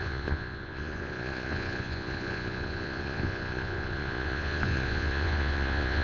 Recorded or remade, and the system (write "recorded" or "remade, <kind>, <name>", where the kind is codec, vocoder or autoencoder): remade, vocoder, Vocos